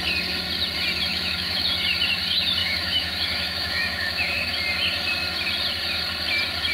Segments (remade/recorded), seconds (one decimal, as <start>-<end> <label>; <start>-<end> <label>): 0.0-1.1 recorded; 1.1-1.7 remade; 1.7-2.6 recorded; 2.6-4.5 remade; 4.5-6.7 recorded